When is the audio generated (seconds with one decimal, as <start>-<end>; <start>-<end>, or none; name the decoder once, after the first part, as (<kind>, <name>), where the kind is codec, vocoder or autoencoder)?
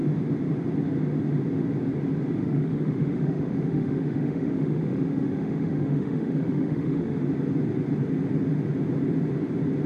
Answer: 2.4-7.2 (autoencoder, DAC-VAE)